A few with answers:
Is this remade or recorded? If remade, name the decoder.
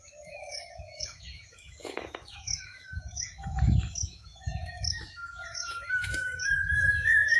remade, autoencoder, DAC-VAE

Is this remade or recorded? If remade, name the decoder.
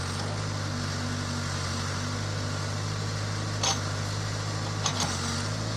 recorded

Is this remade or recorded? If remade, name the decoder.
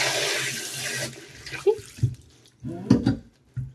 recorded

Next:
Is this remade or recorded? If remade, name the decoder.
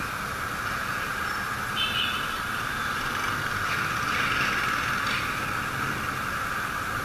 recorded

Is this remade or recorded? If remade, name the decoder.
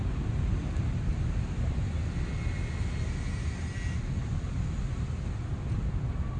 recorded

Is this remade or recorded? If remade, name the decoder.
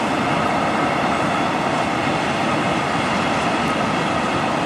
recorded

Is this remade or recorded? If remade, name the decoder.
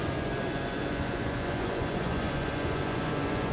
remade, vocoder, Vocos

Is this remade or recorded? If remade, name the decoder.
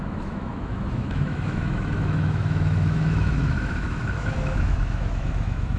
remade, autoencoder, DAC-VAE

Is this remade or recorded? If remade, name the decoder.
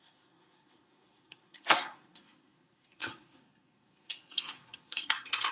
remade, codec, SNAC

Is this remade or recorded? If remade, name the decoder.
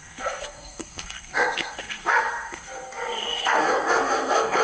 remade, codec, SNAC